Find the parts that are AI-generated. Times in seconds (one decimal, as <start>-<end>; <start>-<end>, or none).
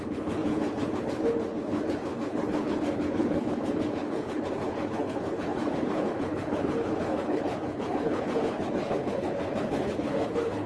0.0-10.7